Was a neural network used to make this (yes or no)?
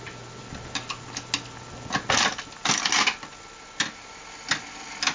no